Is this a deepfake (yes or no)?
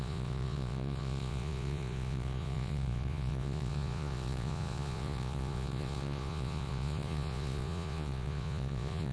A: yes